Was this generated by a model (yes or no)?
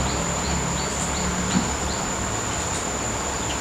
no